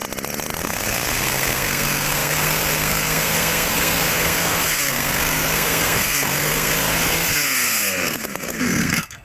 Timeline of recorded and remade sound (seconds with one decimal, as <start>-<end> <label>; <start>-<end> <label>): 0.0-0.6 recorded; 0.6-9.2 remade